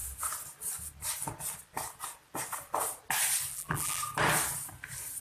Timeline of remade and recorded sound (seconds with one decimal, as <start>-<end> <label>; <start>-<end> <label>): 0.0-3.5 recorded; 3.5-4.0 remade; 4.0-5.2 recorded